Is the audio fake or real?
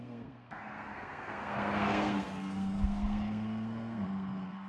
fake